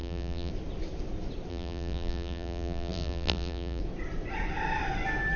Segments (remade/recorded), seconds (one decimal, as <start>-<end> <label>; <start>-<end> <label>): 0.0-0.5 remade; 0.5-1.5 recorded; 1.5-3.8 remade; 3.8-5.4 recorded